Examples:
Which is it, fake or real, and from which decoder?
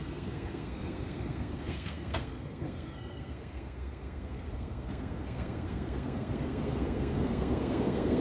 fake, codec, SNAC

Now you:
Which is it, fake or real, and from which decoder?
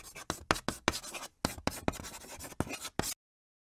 real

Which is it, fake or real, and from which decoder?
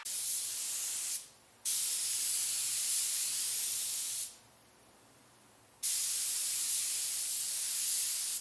real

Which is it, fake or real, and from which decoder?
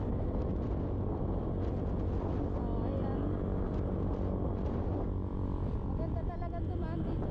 real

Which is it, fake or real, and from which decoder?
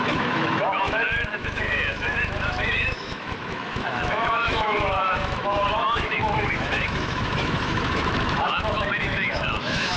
fake, autoencoder, DAC-VAE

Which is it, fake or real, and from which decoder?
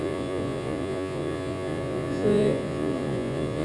fake, vocoder, Vocos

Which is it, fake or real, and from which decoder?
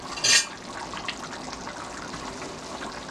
real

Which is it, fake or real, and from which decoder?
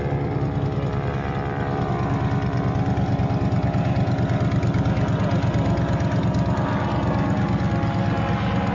real